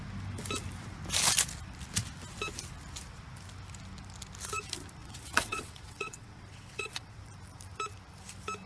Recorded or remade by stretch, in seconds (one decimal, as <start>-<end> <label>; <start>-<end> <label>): 0.0-5.0 recorded; 5.0-7.2 remade; 7.2-8.7 recorded